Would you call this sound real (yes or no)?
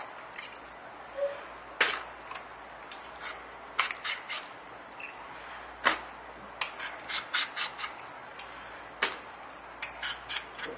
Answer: yes